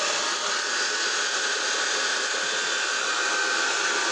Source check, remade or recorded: recorded